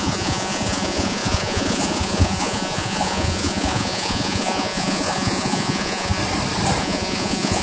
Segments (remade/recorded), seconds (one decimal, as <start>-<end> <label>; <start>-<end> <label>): 0.0-6.2 remade; 6.2-6.8 recorded; 6.8-7.6 remade